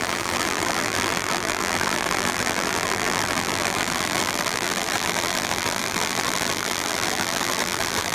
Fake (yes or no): yes